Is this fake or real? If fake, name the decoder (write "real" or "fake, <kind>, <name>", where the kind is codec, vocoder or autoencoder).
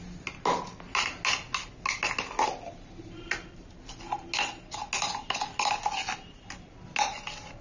real